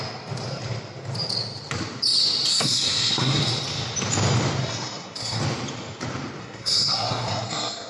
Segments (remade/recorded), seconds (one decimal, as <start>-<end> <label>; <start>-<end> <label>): 0.0-2.5 recorded; 2.5-3.4 remade; 3.4-4.6 recorded; 4.6-5.4 remade; 5.4-6.4 recorded; 6.4-7.9 remade